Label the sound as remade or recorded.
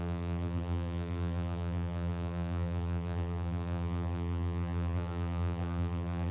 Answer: remade